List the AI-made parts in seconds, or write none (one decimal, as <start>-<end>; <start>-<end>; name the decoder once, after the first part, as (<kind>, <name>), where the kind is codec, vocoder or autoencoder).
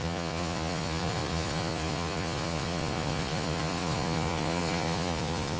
0.0-5.6 (vocoder, Vocos)